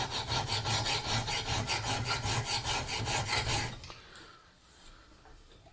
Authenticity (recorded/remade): recorded